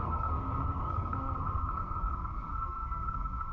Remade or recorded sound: remade